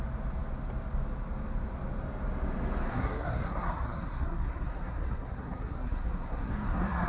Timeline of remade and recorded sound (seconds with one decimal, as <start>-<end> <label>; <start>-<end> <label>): 0.0-2.9 recorded; 2.9-7.1 remade